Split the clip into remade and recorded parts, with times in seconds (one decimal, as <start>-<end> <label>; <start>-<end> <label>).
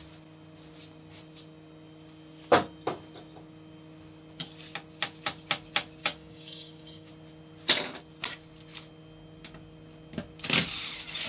0.0-6.0 recorded; 6.0-7.1 remade; 7.1-11.3 recorded